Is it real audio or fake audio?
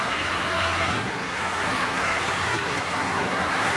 fake